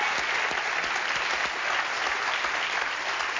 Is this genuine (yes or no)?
yes